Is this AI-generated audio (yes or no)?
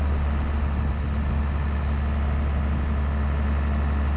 no